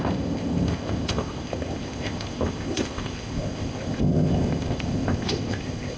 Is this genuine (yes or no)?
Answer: no